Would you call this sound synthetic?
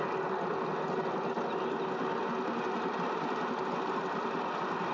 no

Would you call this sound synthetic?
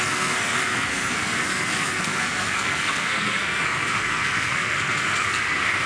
yes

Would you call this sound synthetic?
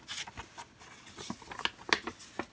no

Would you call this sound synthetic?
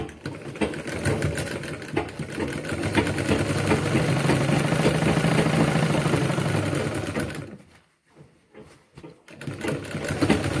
no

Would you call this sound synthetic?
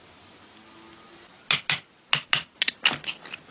no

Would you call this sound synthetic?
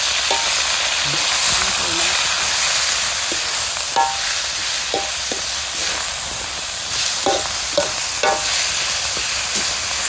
no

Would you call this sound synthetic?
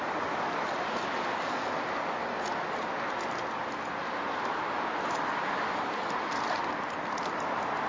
no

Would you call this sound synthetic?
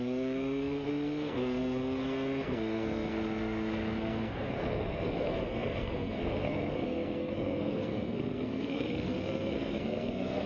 yes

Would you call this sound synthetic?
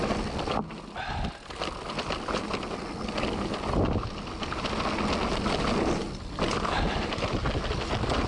no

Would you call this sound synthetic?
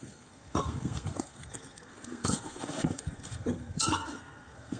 yes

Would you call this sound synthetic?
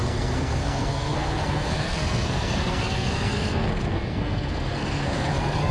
yes